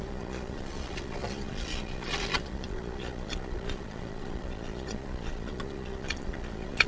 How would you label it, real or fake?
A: fake